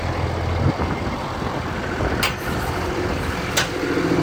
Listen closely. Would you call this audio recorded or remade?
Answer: recorded